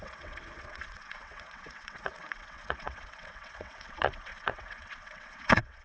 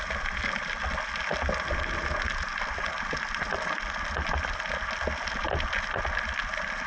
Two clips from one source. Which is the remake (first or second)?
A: first